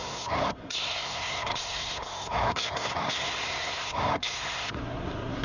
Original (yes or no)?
no